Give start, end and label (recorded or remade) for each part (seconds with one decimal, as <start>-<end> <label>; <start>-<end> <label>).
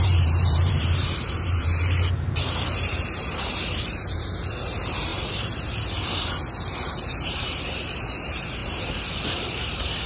0.0-10.1 remade